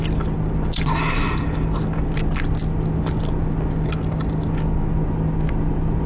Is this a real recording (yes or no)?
yes